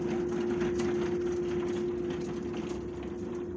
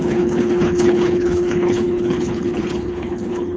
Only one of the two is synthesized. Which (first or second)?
second